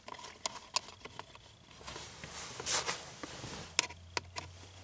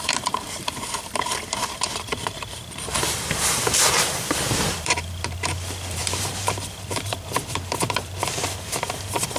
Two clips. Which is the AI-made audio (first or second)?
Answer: second